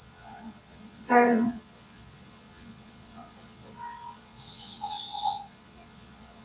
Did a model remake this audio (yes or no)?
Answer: yes